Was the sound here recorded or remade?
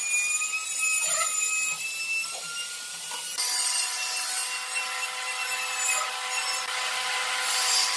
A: recorded